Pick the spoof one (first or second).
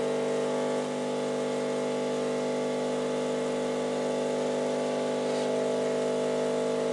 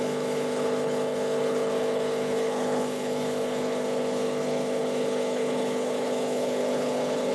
second